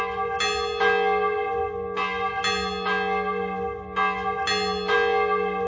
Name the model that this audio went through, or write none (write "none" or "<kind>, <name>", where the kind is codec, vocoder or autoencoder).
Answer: none